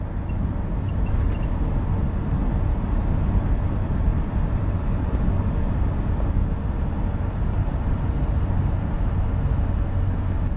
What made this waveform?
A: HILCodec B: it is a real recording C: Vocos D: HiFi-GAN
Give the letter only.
B